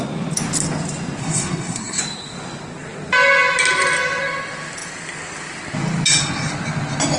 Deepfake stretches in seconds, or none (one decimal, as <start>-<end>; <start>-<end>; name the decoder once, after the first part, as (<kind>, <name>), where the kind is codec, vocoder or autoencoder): 1.2-2.0 (codec, SNAC)